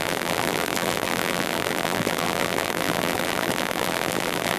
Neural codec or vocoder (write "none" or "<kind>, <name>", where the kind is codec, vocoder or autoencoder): vocoder, BigVGAN v2